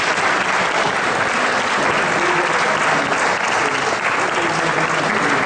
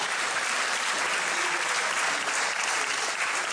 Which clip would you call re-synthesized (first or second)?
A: second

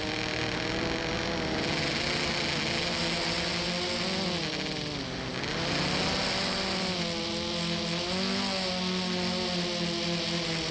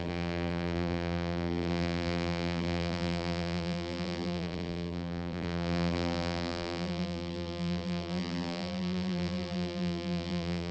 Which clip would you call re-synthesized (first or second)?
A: second